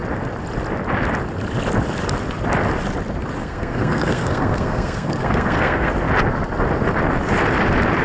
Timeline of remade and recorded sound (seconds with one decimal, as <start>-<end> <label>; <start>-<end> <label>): 0.0-3.4 recorded; 3.4-5.9 remade; 5.9-8.0 recorded